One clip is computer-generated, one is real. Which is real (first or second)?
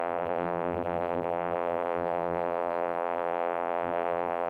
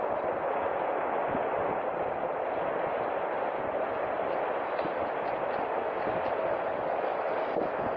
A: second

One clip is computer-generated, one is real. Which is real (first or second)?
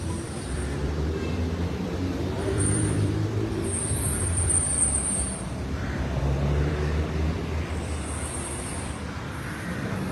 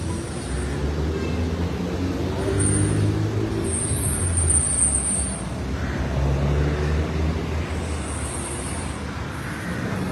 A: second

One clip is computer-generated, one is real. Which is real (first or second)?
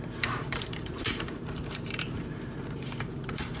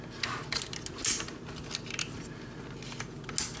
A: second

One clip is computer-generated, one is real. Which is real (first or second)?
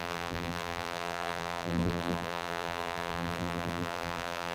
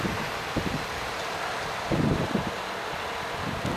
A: second